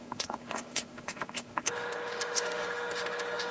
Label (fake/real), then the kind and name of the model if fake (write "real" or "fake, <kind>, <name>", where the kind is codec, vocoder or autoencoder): fake, autoencoder, DAC-VAE